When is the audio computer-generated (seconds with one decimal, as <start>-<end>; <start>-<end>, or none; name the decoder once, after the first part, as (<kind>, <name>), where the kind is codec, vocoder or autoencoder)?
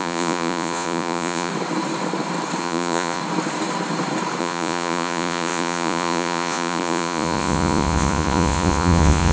0.0-1.5 (vocoder, Vocos); 2.6-3.2; 4.4-9.3